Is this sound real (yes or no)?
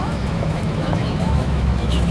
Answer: no